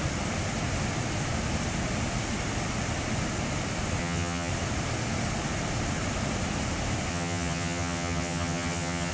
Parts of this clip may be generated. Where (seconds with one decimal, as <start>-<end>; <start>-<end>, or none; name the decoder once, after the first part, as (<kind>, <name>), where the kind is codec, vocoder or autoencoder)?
4.0-4.5 (vocoder, HiFi-GAN); 7.1-9.1